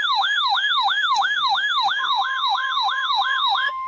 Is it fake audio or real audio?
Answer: fake